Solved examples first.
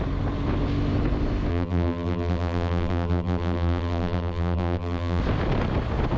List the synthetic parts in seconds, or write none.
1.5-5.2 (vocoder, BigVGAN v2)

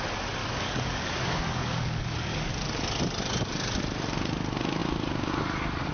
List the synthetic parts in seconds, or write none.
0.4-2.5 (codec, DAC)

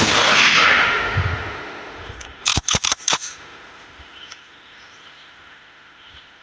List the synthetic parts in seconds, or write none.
0.0-6.4 (autoencoder, DAC-VAE)

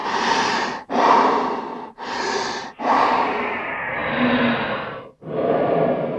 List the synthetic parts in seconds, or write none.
0.0-3.1 (vocoder, BigVGAN v2)

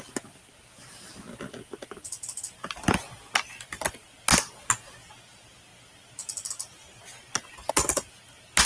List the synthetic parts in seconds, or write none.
none

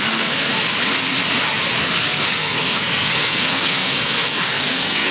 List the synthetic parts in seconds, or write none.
0.0-0.5 (codec, SNAC); 1.8-5.1